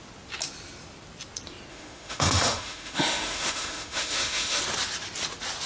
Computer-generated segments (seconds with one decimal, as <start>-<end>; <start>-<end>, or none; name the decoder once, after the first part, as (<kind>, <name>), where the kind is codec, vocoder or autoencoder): 1.7-4.6 (autoencoder, DAC-VAE)